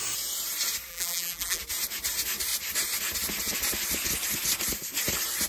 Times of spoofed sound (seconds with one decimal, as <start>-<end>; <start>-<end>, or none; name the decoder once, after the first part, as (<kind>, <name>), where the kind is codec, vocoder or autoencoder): 0.9-1.6 (vocoder, BigVGAN v2)